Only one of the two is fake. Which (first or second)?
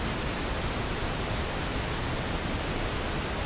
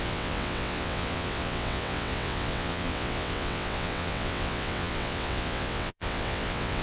second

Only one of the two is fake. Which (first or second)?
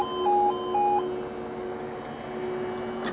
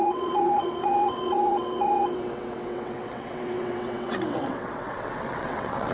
second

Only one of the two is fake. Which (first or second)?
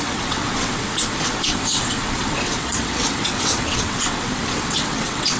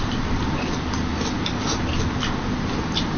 first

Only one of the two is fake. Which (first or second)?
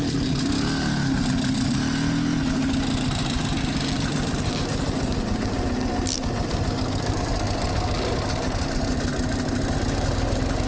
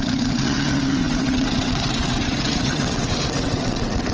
second